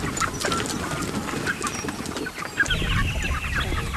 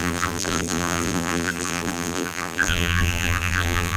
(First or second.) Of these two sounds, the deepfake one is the second